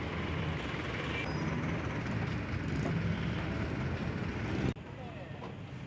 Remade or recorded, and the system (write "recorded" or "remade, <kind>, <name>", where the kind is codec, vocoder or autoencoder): recorded